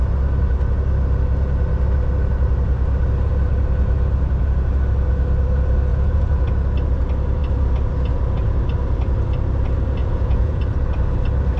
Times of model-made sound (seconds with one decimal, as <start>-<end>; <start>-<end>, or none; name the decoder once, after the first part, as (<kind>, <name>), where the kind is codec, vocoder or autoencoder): 5.9-6.5 (vocoder, Vocos); 10.0-10.6